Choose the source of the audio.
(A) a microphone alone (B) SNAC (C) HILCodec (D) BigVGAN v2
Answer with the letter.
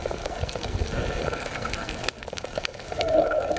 B